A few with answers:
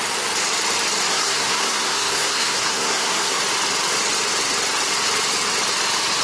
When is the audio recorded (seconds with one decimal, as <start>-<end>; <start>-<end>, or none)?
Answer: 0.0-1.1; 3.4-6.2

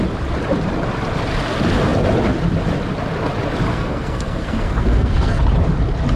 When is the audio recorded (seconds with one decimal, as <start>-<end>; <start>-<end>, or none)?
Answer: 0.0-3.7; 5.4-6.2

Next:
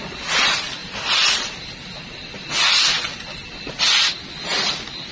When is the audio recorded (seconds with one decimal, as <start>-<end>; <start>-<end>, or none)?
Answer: 0.0-5.1

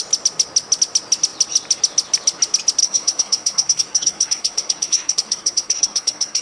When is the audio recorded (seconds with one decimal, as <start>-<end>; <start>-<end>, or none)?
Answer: 0.0-2.8